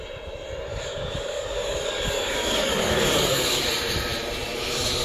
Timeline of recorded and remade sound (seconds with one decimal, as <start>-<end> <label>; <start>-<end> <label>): 0.0-0.7 recorded; 0.7-3.7 remade; 3.7-5.0 recorded